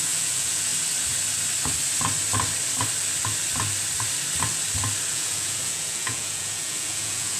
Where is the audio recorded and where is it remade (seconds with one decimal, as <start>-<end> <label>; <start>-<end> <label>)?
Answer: 0.0-0.7 remade; 0.7-5.1 recorded; 5.1-7.4 remade